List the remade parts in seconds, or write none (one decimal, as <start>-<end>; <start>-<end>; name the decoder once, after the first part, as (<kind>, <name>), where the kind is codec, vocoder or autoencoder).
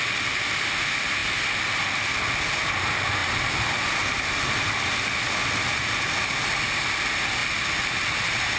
3.2-4.3 (vocoder, BigVGAN v2)